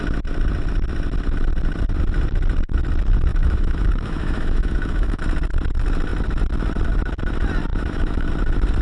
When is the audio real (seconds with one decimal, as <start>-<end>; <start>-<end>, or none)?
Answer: 0.0-3.3; 5.2-7.7; 8.3-8.8